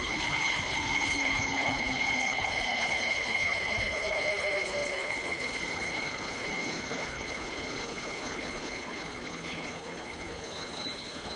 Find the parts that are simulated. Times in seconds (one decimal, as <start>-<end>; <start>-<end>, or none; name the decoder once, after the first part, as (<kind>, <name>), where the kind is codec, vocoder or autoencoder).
0.0-11.4 (codec, HILCodec)

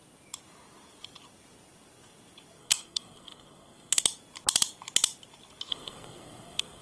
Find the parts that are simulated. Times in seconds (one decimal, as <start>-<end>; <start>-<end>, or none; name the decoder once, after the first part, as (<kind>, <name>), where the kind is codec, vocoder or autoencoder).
2.6-4.0 (codec, SNAC); 5.7-6.8

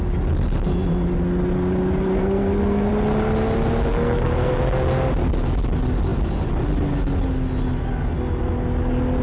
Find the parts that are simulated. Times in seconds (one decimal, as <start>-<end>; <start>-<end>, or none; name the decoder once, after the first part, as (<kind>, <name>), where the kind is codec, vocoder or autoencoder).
2.2-2.9 (codec, SNAC); 3.9-4.5

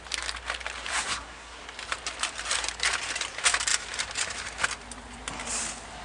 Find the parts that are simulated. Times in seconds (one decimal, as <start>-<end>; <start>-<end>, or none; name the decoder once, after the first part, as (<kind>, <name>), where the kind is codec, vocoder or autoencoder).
0.9-1.6 (codec, SNAC)

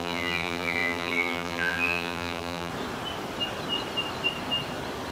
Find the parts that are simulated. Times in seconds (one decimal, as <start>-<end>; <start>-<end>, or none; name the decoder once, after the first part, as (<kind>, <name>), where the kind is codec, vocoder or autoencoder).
0.0-2.7 (vocoder, BigVGAN v2)

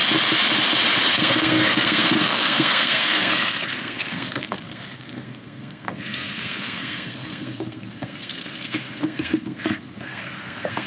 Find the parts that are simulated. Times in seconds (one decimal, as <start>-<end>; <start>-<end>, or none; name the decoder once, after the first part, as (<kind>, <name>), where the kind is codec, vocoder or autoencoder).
1.1-10.9 (codec, SNAC)